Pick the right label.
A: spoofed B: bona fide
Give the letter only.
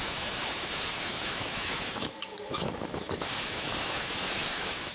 A